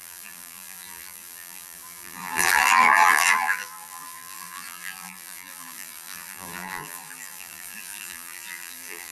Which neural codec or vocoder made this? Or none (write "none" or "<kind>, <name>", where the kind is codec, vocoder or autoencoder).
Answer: vocoder, BigVGAN v2